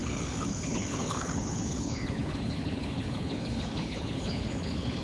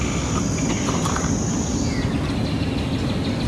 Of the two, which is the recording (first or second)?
second